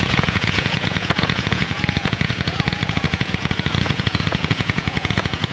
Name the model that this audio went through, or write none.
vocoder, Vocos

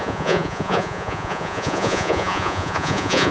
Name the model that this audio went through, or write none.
vocoder, Vocos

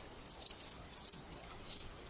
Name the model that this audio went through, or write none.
none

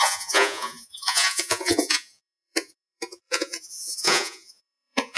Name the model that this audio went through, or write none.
vocoder, Vocos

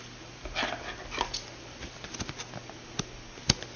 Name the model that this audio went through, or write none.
none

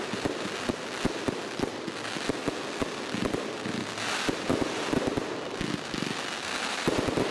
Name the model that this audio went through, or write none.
none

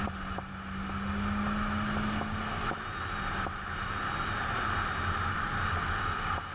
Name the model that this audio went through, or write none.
none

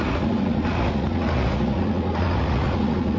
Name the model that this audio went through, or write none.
vocoder, Vocos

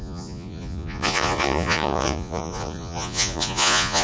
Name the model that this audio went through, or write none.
vocoder, Vocos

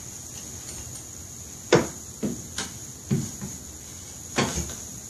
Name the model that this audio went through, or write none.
none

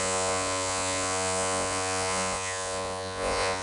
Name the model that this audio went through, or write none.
vocoder, Vocos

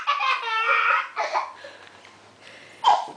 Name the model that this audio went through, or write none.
none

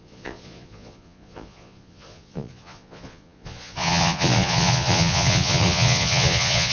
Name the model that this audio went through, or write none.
vocoder, Vocos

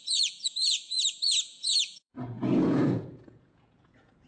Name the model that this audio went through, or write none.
vocoder, Vocos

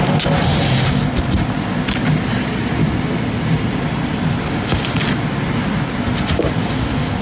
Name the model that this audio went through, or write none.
none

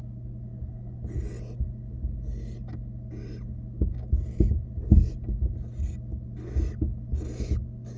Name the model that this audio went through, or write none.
none